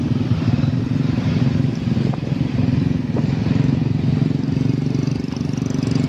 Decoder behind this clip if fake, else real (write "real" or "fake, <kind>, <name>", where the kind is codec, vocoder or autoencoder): real